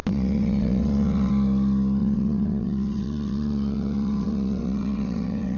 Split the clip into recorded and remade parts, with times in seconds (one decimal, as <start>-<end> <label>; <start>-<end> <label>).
0.0-1.3 remade; 1.3-2.0 recorded; 2.0-5.6 remade